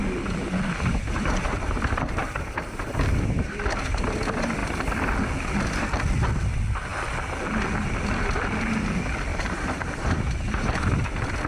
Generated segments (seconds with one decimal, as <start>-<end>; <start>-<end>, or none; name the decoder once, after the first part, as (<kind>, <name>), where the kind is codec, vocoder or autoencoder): 0.9-3.6 (vocoder, BigVGAN v2); 9.3-10.2